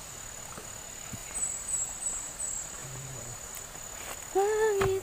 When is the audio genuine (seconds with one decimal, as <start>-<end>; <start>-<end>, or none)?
0.0-1.2; 2.3-2.8; 3.5-5.0